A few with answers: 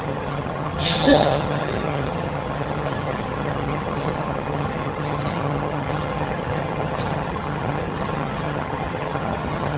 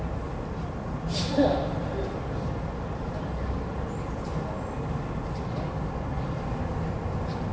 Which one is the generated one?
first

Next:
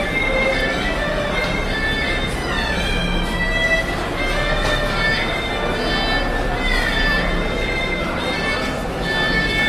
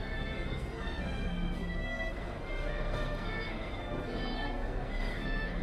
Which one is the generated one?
second